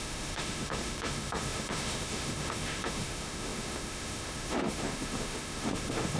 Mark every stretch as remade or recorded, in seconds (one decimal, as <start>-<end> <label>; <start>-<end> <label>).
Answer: 0.0-6.2 remade